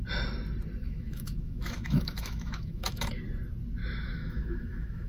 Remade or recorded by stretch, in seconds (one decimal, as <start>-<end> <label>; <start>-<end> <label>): 0.0-0.8 recorded; 0.8-3.1 remade; 3.1-3.8 recorded; 3.8-5.1 remade